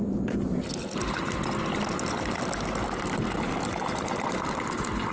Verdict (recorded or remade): recorded